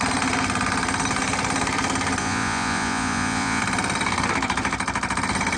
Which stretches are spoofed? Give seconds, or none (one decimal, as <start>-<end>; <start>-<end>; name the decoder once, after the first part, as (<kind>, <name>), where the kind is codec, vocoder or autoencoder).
2.2-3.6 (vocoder, Vocos)